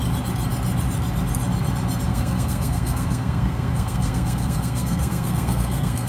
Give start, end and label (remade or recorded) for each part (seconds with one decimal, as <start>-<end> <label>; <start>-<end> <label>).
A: 0.0-2.1 recorded; 2.1-6.1 remade